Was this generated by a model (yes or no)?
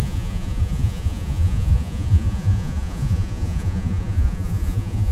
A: yes